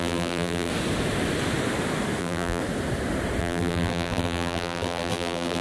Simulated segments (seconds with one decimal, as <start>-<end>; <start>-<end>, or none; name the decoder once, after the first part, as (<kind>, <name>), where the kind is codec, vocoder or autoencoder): 0.0-0.7 (vocoder, BigVGAN v2); 2.2-2.6; 3.4-5.6